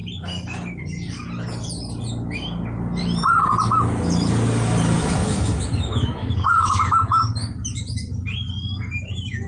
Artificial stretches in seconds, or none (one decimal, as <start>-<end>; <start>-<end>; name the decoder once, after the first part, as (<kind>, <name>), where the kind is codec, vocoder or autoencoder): 5.0-7.3 (autoencoder, DAC-VAE)